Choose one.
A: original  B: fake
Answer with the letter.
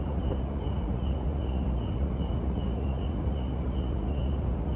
B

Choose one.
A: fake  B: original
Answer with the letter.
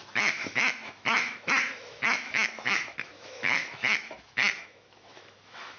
A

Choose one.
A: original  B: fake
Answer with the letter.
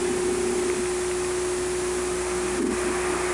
A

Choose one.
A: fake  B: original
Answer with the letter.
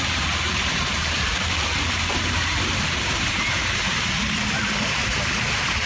A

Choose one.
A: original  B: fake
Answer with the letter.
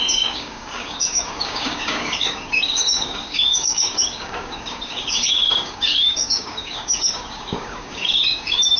B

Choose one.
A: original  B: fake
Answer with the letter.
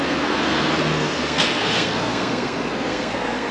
B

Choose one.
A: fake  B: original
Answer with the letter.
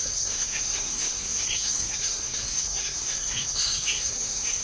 A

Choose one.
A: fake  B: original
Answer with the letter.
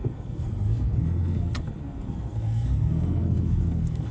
A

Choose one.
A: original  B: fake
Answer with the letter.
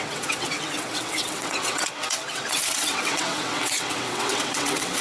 B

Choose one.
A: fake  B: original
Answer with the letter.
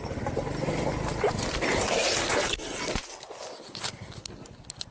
B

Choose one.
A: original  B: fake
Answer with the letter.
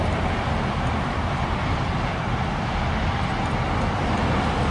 A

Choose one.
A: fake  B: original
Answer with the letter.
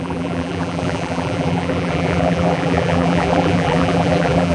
A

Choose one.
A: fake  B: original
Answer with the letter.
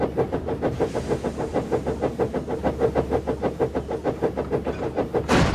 B